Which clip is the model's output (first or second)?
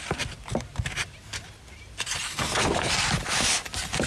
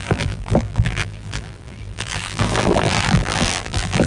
second